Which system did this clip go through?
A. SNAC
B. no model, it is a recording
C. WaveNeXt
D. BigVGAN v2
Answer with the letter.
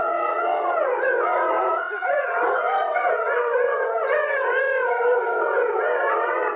C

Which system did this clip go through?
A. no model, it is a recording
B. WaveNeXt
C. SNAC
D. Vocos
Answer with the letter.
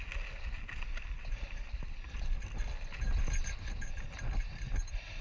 A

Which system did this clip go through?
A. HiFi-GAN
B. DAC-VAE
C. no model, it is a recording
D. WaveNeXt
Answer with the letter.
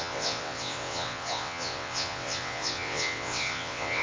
D